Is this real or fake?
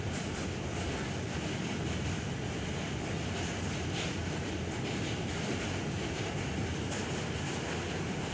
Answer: real